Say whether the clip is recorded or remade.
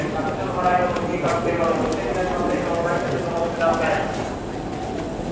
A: recorded